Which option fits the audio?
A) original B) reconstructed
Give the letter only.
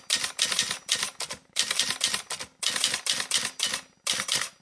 A